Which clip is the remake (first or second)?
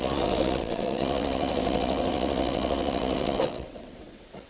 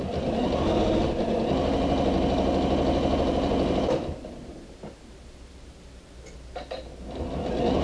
first